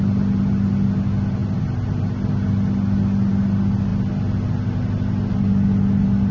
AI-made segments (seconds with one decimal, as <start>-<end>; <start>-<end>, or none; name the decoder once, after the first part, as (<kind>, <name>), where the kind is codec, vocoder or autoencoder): none

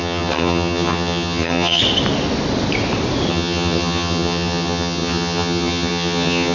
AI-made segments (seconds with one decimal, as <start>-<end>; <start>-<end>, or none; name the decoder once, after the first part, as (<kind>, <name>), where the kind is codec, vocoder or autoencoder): 0.0-1.8 (vocoder, HiFi-GAN); 3.3-6.5

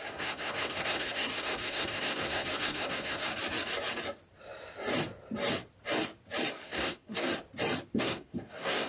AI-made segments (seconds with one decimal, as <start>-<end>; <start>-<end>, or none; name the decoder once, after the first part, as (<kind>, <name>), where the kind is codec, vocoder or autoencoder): 0.0-3.3 (codec, SNAC); 6.5-7.3; 8.0-8.9

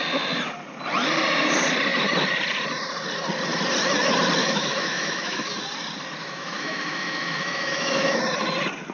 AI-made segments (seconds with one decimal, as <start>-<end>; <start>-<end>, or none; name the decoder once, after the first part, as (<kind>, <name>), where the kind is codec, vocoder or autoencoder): 4.4-5.5 (autoencoder, DAC-VAE); 6.2-8.2

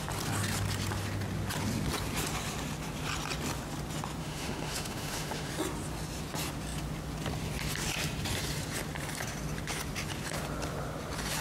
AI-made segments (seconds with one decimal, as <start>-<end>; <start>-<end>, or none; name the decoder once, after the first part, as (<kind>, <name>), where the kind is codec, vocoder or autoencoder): 4.2-5.5 (autoencoder, DAC-VAE)